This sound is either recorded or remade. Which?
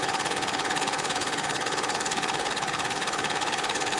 remade